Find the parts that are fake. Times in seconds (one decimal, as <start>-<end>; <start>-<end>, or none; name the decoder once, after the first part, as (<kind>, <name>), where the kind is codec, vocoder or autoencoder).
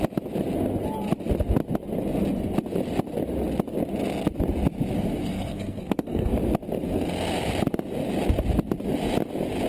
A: 5.2-6.3 (codec, SNAC)